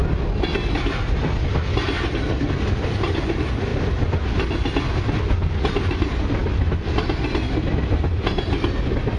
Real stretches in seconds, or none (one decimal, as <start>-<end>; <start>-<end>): 0.0-9.2

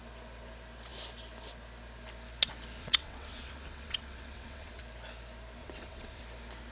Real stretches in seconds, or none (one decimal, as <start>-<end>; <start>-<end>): 0.0-2.8; 4.8-5.6; 6.2-6.7

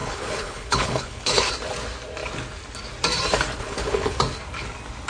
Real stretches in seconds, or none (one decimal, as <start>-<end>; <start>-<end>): 1.5-3.6; 4.2-5.1

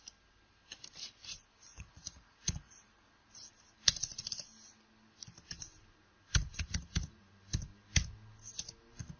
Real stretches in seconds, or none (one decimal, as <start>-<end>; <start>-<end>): 0.0-1.7; 3.1-9.2

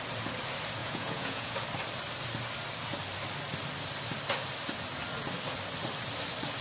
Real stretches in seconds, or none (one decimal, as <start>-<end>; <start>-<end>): 0.0-0.8; 1.5-6.6

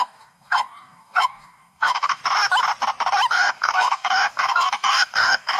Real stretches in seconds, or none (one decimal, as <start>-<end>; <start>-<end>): 2.2-3.3

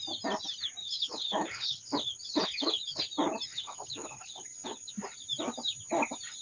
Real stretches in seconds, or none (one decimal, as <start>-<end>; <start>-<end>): 0.0-0.8; 3.0-3.5; 4.9-6.4

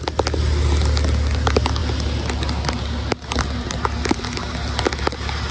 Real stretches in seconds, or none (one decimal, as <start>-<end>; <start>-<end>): 0.0-5.5